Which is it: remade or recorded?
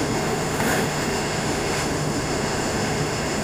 remade